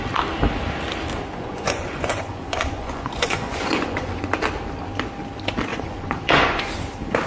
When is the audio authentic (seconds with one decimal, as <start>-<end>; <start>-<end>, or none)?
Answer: 0.0-1.3; 4.3-5.7; 6.6-7.3